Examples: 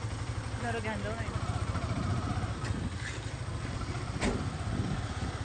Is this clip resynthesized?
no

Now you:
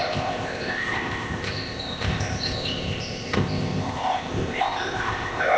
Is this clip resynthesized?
yes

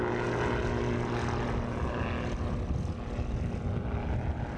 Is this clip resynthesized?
no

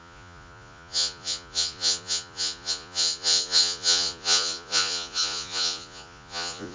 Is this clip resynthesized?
yes